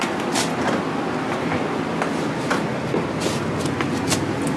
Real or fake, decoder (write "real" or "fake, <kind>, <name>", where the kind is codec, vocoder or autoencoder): real